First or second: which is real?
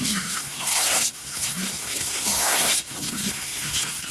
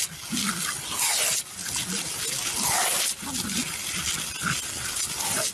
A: second